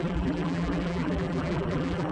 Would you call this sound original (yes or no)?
no